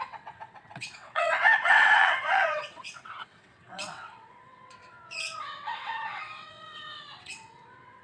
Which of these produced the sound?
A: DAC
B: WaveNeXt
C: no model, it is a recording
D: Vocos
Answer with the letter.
B